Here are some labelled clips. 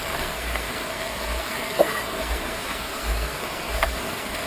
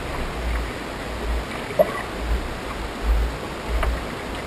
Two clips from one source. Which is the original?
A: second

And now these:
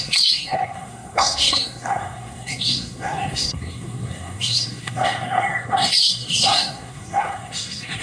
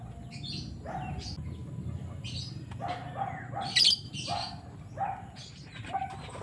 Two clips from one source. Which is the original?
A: second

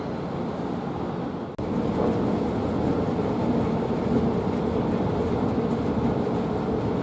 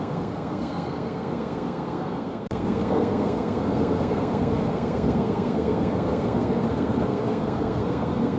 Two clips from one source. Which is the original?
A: first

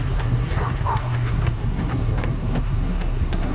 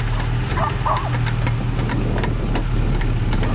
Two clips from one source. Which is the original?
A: second